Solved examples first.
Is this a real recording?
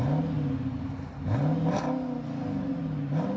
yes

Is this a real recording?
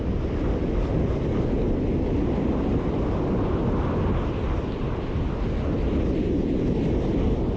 yes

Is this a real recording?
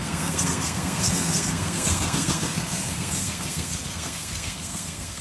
no